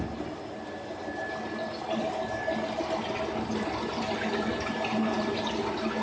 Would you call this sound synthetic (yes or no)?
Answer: no